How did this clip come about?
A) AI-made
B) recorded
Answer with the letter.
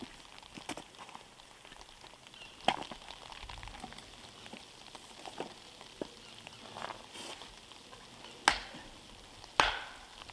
B